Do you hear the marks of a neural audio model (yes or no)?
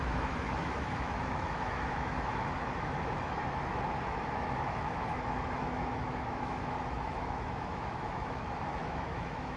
yes